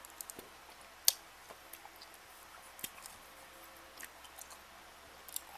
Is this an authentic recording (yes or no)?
yes